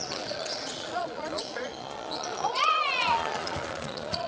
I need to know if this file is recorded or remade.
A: remade